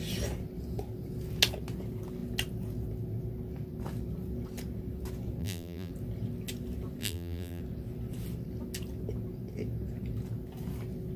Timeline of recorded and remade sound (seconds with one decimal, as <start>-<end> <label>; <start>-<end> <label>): 0.0-5.4 recorded; 5.4-5.9 remade; 5.9-7.0 recorded; 7.0-7.6 remade; 7.6-11.2 recorded